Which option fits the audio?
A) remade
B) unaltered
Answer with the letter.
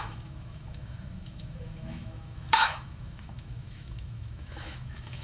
A